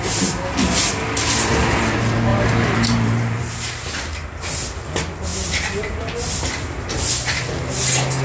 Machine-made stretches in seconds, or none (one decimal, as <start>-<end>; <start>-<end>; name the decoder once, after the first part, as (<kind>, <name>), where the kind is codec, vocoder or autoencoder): 2.3-3.5 (vocoder, BigVGAN v2)